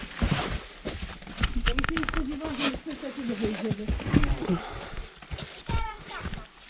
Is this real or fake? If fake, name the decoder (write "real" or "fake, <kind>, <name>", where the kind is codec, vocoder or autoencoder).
real